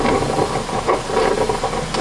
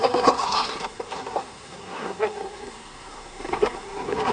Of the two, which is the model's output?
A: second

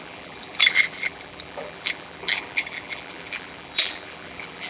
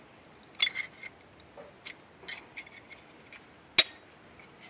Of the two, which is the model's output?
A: first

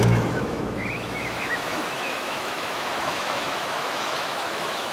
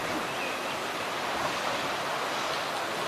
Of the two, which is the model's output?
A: first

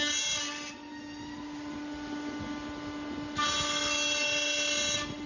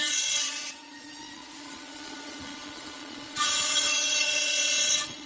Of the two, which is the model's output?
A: second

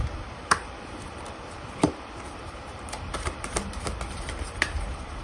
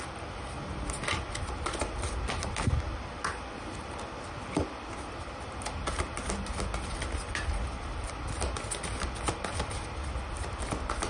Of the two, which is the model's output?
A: first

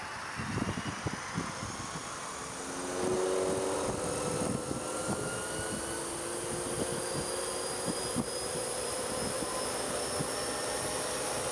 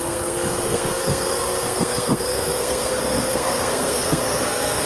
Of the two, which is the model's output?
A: second